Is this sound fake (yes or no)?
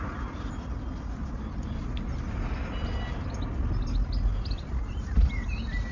no